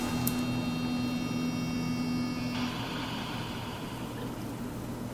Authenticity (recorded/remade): recorded